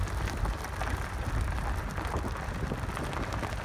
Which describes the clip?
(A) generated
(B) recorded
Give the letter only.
B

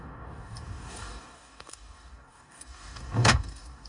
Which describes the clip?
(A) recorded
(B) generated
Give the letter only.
B